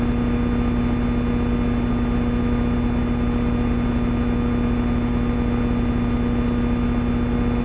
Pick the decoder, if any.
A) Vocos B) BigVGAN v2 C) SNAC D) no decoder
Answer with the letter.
D